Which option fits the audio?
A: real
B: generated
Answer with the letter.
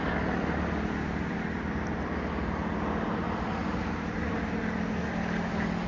A